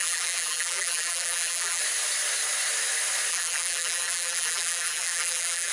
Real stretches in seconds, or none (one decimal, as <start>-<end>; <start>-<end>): 1.8-3.3